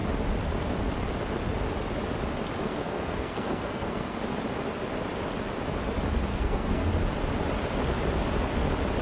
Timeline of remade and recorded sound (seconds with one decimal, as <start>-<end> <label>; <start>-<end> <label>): 0.0-2.6 recorded; 2.6-4.2 remade; 4.2-6.3 recorded; 6.3-6.9 remade; 6.9-9.0 recorded